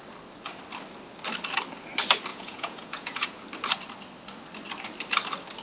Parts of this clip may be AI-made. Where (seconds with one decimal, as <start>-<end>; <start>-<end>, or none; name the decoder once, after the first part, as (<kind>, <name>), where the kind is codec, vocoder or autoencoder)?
2.3-3.4 (vocoder, Vocos)